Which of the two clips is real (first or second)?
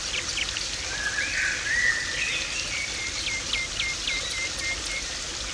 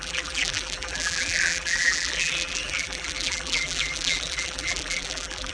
first